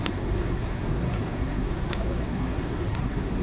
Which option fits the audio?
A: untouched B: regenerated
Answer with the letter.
B